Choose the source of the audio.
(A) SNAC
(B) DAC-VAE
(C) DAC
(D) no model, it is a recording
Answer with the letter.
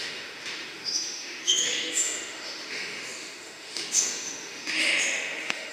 B